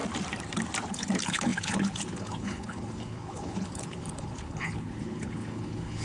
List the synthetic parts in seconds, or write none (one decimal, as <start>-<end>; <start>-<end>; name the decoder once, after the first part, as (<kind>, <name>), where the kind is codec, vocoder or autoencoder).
0.9-6.0 (codec, HILCodec)